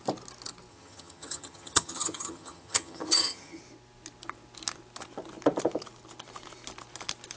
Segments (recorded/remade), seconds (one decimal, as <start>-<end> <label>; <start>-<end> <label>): 0.0-0.7 recorded; 0.7-3.6 remade; 3.6-7.4 recorded